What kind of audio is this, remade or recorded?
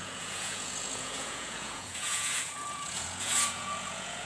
remade